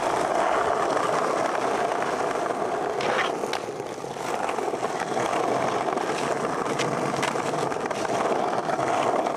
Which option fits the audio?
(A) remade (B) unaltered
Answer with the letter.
B